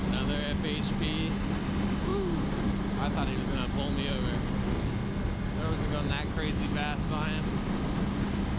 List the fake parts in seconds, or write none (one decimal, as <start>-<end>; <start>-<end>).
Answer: none